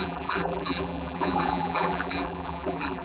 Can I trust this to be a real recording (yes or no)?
no